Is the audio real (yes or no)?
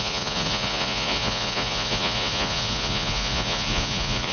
no